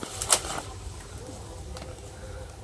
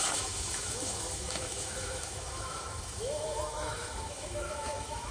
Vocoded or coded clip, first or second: second